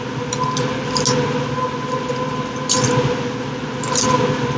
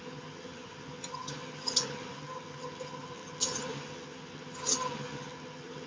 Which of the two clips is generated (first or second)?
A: second